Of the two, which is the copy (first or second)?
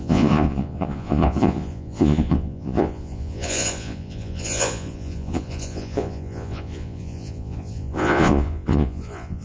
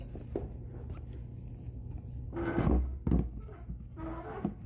first